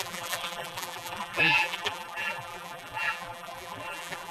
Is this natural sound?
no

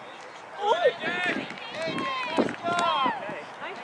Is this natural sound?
yes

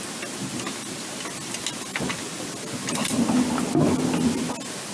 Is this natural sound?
yes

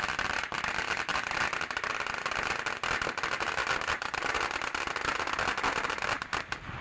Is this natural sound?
yes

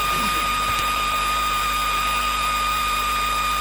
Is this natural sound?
no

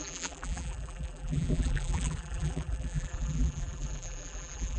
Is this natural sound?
no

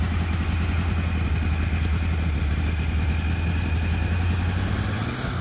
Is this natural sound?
yes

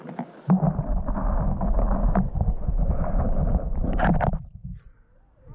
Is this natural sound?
yes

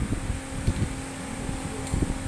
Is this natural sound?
yes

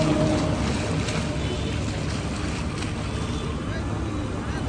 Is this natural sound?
yes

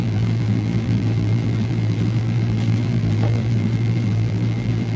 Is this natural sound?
no